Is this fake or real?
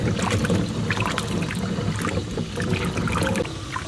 real